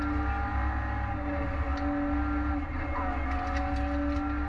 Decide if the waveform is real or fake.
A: real